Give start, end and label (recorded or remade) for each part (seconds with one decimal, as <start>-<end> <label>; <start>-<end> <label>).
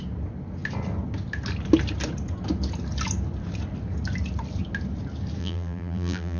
0.0-5.4 recorded; 5.4-6.4 remade